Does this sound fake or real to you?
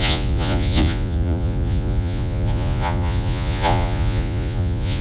fake